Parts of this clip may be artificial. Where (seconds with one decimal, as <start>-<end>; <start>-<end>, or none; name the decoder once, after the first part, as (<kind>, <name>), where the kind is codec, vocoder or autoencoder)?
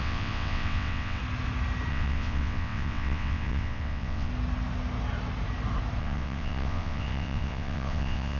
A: 0.0-1.2 (vocoder, WaveNeXt); 1.9-4.3; 6.0-8.4